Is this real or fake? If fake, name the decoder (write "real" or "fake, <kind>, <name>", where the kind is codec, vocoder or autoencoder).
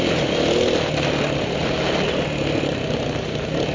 real